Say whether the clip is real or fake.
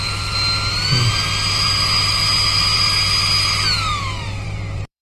fake